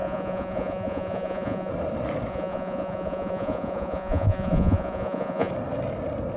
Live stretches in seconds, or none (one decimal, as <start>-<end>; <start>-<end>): 1.7-2.3; 5.5-6.4